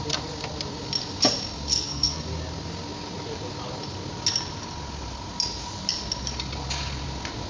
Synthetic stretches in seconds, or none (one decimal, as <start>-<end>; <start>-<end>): 1.7-2.2